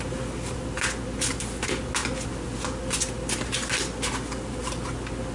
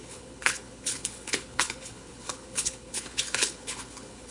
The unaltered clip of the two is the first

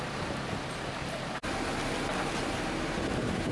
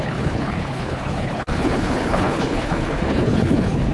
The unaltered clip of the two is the first